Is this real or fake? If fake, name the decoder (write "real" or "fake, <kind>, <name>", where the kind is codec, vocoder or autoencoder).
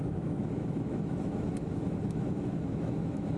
fake, autoencoder, DAC-VAE